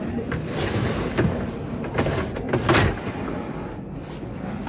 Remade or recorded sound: recorded